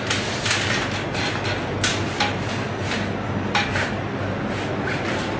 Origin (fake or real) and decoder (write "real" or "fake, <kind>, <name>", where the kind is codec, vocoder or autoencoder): real